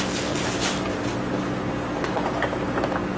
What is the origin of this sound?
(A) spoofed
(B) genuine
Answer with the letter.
B